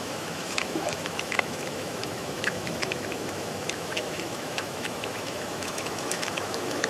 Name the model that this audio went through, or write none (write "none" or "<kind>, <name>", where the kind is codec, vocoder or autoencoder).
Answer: autoencoder, DAC-VAE